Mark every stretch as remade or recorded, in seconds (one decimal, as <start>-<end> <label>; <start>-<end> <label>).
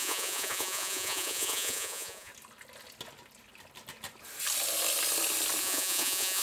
0.0-2.3 remade; 2.3-5.6 recorded; 5.6-6.4 remade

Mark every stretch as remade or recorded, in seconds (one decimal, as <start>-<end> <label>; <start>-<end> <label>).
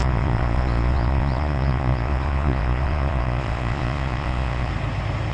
0.0-4.7 remade; 4.7-5.3 recorded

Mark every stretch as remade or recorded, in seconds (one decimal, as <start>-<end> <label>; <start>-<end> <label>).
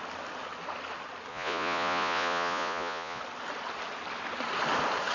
0.0-1.3 recorded; 1.3-3.2 remade; 3.2-5.1 recorded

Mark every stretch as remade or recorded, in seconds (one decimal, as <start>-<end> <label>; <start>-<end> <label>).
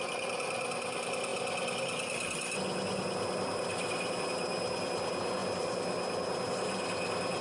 0.0-7.4 recorded